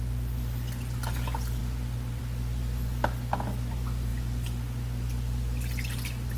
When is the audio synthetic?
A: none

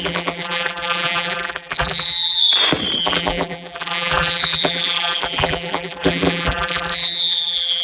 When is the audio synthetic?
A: 0.0-2.4; 3.0-7.8

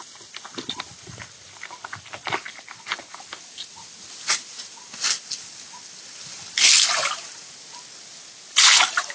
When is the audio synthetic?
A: none

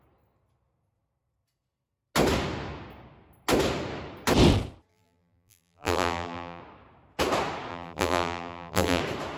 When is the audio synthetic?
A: 4.9-6.6; 7.7-9.0

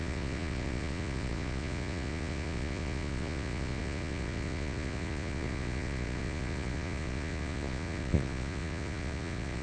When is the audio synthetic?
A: 0.0-9.6